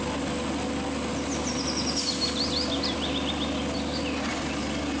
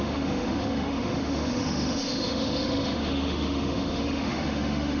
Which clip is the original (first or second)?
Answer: first